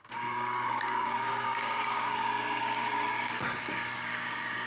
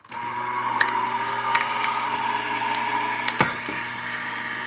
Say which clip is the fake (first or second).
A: first